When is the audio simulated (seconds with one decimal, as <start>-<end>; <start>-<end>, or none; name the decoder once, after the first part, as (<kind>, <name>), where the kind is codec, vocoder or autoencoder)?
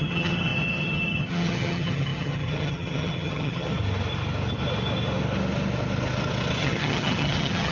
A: 0.0-3.7 (vocoder, HiFi-GAN); 6.6-7.7